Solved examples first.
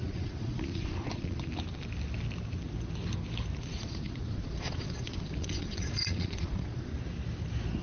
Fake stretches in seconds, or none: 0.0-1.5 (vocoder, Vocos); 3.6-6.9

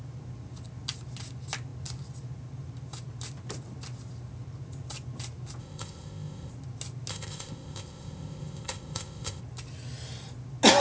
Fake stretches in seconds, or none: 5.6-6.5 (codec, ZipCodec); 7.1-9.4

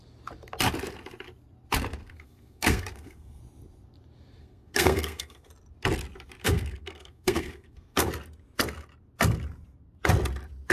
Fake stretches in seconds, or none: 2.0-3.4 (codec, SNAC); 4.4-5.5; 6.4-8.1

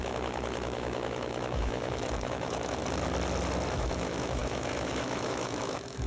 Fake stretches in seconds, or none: 0.0-2.8 (autoencoder, DAC-VAE); 3.7-6.1